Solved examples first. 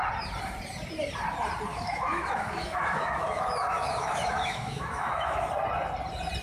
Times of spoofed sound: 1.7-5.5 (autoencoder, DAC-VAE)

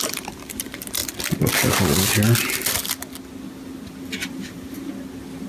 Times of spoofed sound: 0.0-1.0 (vocoder, BigVGAN v2); 4.3-4.9

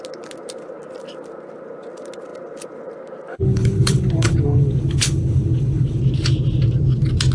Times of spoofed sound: 3.3-6.0 (codec, HILCodec)

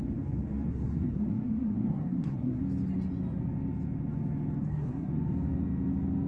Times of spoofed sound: 0.7-2.6 (codec, SNAC); 4.6-5.1

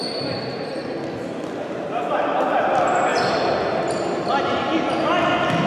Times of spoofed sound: none

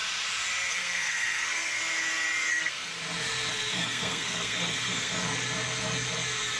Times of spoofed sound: 0.7-1.8 (codec, SNAC); 2.5-2.9; 3.5-5.2

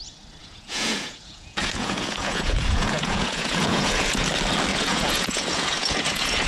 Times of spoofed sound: 0.4-4.3 (vocoder, Vocos); 4.7-6.5

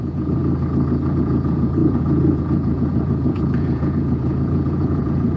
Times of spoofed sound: 0.0-0.4 (vocoder, Vocos); 1.2-5.4